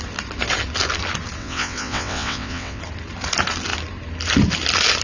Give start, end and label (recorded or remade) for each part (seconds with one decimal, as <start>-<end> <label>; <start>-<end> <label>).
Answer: 0.0-1.4 recorded; 1.4-2.8 remade; 2.8-5.0 recorded